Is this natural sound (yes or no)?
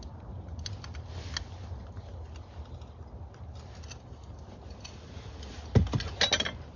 yes